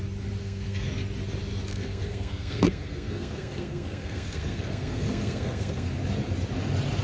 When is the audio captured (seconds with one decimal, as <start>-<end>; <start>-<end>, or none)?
0.0-0.4; 0.9-1.7; 5.9-7.0